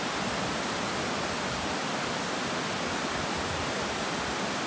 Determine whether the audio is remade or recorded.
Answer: recorded